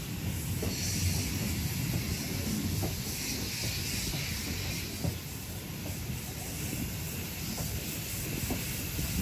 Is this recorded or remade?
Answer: recorded